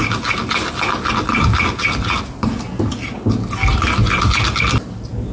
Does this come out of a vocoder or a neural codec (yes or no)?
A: no